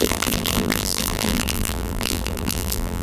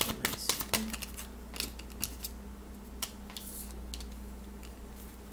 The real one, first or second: second